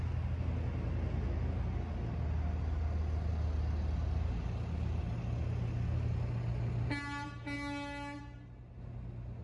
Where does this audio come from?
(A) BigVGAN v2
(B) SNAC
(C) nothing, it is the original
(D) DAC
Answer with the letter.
C